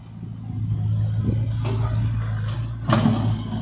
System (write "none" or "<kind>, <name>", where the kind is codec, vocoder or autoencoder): none